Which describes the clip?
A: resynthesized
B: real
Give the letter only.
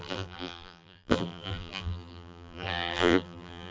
A